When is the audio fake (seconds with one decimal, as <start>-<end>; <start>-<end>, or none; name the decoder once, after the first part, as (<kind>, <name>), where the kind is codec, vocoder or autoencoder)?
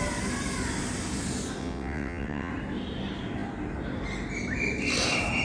1.6-2.5 (vocoder, WaveNeXt)